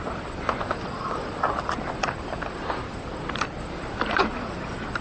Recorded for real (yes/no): no